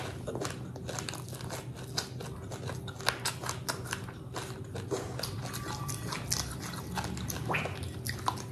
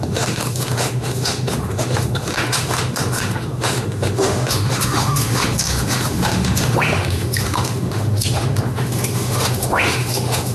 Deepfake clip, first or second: second